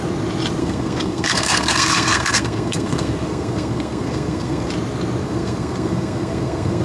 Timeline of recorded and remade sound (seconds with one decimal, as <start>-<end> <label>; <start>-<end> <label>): 0.0-0.6 recorded; 0.6-4.7 remade; 4.7-5.2 recorded; 5.2-6.8 remade